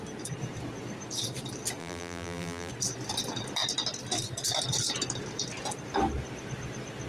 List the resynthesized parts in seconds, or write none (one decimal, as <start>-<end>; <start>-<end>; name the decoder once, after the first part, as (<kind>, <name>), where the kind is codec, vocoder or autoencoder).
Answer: 1.8-2.7 (vocoder, BigVGAN v2)